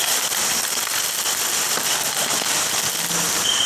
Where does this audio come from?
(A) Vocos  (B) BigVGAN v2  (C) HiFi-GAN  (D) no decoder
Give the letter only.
D